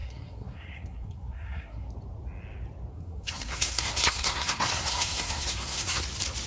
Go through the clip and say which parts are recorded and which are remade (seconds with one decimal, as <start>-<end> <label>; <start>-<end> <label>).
0.0-1.9 remade; 1.9-2.9 recorded; 2.9-6.0 remade; 6.0-6.5 recorded